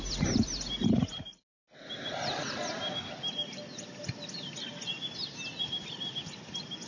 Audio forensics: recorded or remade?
recorded